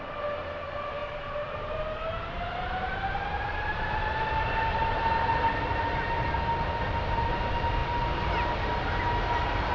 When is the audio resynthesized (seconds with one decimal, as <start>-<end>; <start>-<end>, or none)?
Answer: 1.0-5.0; 7.8-8.5